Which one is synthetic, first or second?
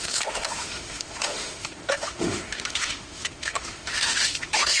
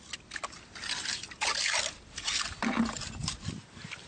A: first